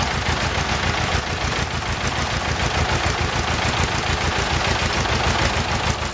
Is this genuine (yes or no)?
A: yes